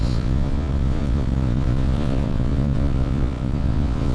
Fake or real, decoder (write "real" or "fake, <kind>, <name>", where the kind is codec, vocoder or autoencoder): fake, vocoder, Vocos